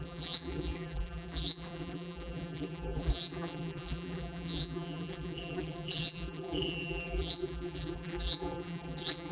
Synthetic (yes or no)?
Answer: yes